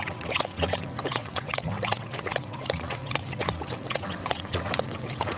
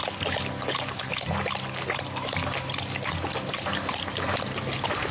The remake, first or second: first